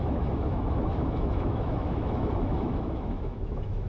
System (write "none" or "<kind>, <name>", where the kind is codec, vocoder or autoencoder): autoencoder, DAC-VAE